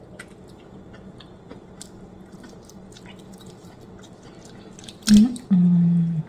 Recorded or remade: recorded